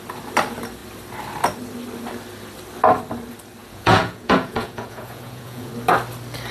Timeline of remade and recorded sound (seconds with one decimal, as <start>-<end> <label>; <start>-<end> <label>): 0.0-3.6 recorded; 3.6-5.7 remade; 5.7-6.5 recorded